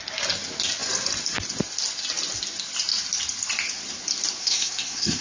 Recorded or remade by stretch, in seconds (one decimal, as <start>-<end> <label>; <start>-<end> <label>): 0.0-4.4 recorded; 4.4-5.2 remade